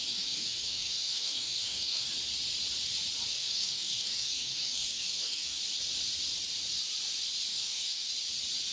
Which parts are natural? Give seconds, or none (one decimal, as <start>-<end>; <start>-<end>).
2.1-3.3; 5.6-7.5; 8.1-8.7